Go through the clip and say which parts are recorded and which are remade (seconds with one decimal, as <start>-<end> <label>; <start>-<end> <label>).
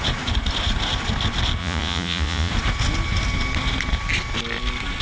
0.0-1.6 recorded; 1.6-2.5 remade; 2.5-5.0 recorded